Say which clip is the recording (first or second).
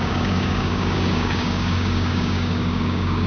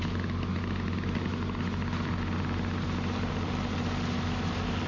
second